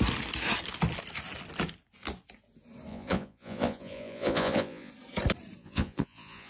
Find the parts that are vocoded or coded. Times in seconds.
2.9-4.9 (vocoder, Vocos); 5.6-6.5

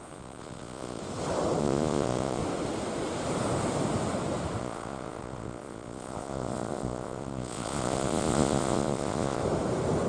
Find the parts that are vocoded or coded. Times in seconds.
0.0-1.0 (vocoder, Vocos); 1.6-2.4; 4.6-9.4

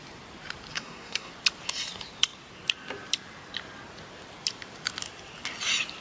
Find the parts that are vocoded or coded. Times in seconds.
0.7-1.3 (codec, SNAC)

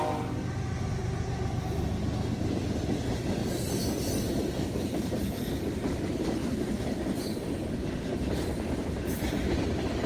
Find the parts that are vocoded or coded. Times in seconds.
3.4-5.6 (vocoder, BigVGAN v2); 6.4-9.3